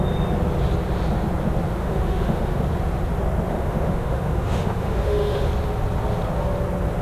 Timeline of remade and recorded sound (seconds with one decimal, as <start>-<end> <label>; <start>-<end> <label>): 0.0-1.8 recorded; 1.8-2.6 remade; 2.6-3.5 recorded; 3.5-5.5 remade; 5.5-7.0 recorded

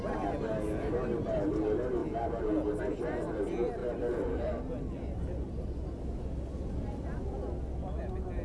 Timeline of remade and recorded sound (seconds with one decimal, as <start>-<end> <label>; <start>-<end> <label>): 0.0-3.8 recorded; 3.8-4.5 remade; 4.5-8.4 recorded

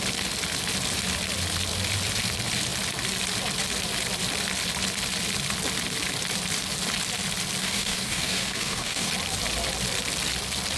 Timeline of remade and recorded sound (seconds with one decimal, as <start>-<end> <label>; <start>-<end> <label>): 0.0-7.6 recorded; 7.6-9.1 remade; 9.1-10.8 recorded